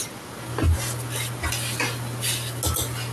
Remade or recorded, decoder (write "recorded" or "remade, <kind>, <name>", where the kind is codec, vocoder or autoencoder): recorded